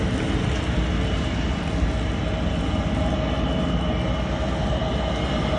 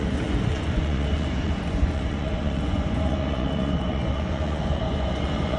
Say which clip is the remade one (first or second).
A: second